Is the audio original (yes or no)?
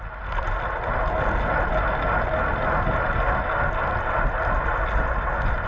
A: yes